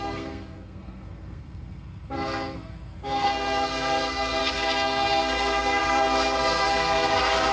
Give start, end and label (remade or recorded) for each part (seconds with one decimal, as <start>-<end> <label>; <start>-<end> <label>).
0.0-7.5 remade